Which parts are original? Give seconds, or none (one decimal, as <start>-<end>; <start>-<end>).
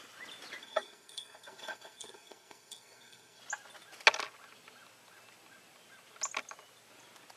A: 0.0-0.6; 3.4-7.4